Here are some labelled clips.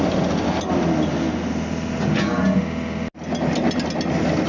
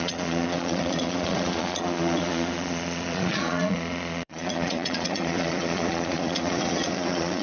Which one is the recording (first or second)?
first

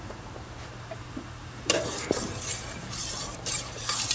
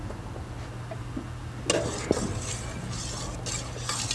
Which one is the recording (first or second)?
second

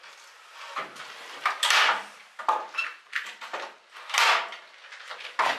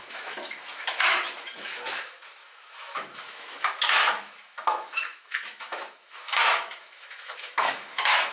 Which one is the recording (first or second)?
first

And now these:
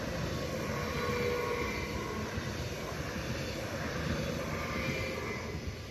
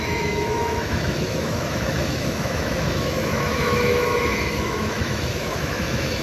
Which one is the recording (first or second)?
first